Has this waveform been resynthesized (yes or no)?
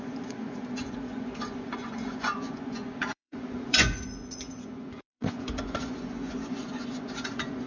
yes